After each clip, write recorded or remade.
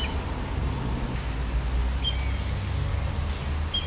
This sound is recorded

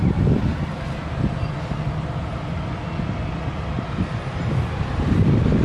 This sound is recorded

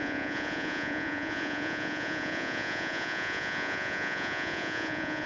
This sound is remade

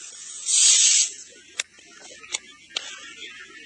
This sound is recorded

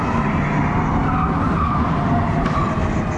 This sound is recorded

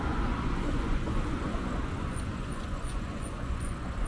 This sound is remade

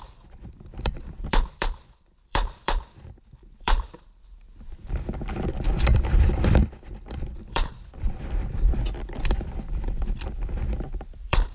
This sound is remade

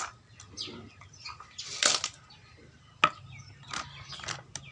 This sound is recorded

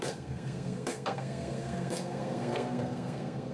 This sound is remade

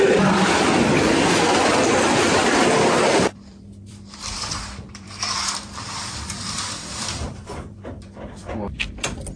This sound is remade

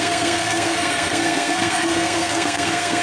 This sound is remade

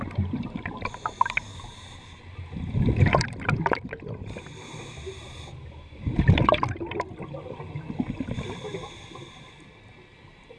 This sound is recorded